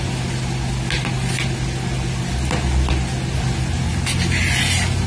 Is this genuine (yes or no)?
yes